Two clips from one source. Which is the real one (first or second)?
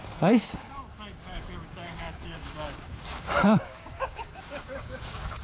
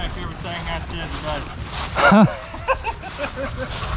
second